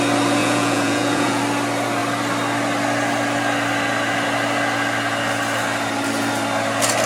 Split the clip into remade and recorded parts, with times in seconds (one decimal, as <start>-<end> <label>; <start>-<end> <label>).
0.0-0.4 recorded; 0.4-1.4 remade; 1.4-7.1 recorded